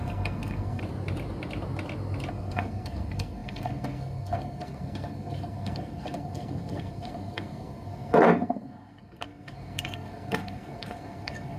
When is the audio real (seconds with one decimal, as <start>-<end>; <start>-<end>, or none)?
0.8-2.3